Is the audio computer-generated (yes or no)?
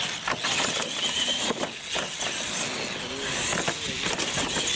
no